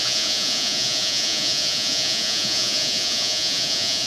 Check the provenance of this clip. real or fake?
fake